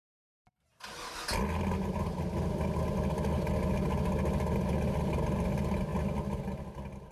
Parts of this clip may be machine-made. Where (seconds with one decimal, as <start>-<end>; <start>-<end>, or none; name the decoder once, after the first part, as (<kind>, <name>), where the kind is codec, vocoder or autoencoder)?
none